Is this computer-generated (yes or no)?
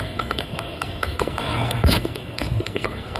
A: yes